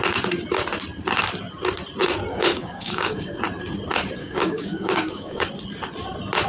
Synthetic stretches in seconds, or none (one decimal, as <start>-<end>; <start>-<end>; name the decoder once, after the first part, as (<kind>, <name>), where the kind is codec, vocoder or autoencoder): 2.3-3.4 (codec, DAC); 4.2-5.5